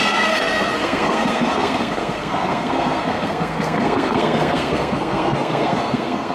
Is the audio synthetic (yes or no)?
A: yes